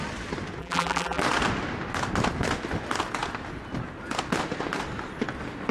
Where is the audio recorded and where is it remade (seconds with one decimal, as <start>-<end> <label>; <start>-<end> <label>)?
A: 0.0-0.6 recorded; 0.6-1.2 remade; 1.2-5.7 recorded